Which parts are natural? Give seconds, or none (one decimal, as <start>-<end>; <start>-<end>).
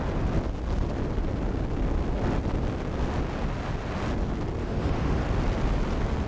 0.0-4.6; 5.2-6.3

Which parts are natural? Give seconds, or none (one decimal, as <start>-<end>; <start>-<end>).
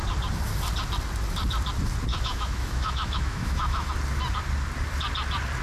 0.0-2.1; 3.9-5.6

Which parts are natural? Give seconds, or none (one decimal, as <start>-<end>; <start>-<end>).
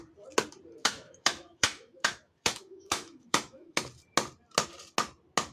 0.0-0.8; 3.8-5.5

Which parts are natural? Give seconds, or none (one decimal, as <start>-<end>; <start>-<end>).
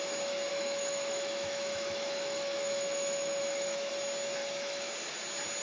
0.0-0.5; 3.9-4.4; 4.9-5.6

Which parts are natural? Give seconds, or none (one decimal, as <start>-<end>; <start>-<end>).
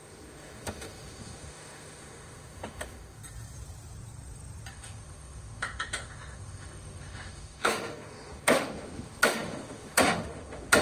3.2-4.7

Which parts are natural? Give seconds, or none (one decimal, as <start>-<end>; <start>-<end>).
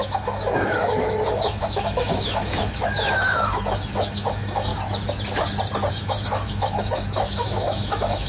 4.7-5.9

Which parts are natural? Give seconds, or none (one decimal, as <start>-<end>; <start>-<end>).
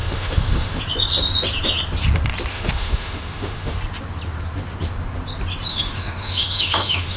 0.8-2.5; 3.8-5.7